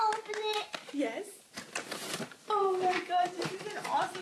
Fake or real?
fake